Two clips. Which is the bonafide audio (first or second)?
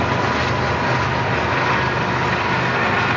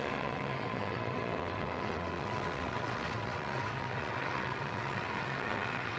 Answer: first